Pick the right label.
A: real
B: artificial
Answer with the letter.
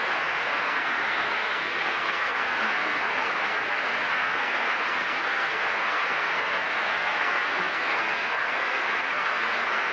B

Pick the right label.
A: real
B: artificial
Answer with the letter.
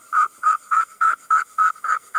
B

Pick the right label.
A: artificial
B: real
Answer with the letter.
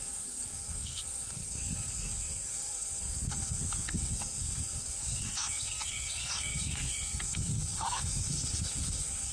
A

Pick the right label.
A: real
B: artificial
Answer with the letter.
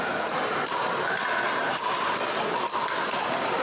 A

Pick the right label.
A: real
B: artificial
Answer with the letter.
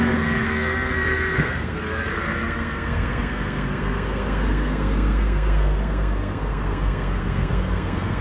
B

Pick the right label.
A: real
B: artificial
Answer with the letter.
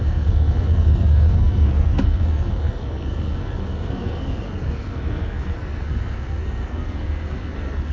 B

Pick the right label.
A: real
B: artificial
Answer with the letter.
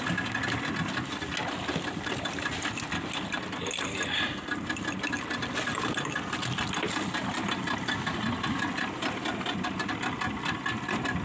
A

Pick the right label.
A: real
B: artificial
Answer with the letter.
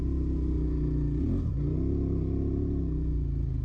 A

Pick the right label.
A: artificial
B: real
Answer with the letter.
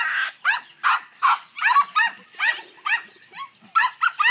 B